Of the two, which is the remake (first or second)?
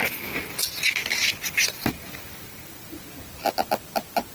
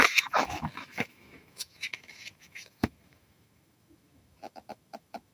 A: second